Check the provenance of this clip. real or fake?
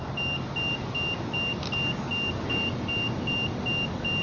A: real